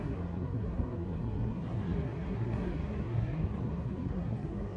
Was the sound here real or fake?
fake